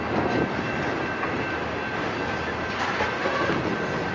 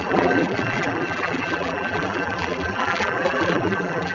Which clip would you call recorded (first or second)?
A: first